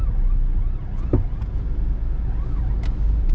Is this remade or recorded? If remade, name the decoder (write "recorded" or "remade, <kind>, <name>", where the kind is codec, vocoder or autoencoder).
recorded